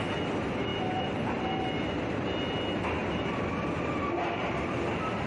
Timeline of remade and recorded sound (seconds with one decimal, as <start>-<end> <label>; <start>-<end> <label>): 0.0-5.3 recorded